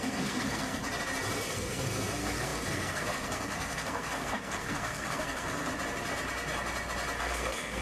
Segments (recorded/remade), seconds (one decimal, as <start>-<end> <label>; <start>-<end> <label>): 0.0-0.8 remade; 0.8-1.5 recorded; 1.5-5.7 remade; 5.7-7.2 recorded; 7.2-7.8 remade